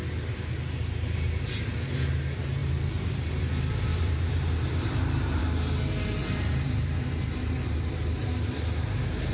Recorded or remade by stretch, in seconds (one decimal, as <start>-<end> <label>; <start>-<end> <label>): 0.0-3.9 recorded; 3.9-5.4 remade; 5.4-6.2 recorded; 6.2-7.9 remade; 7.9-9.3 recorded